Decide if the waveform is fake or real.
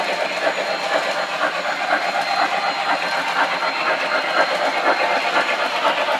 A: real